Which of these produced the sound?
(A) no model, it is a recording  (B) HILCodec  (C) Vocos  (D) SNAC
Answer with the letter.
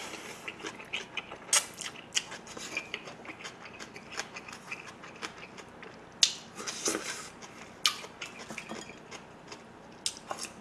A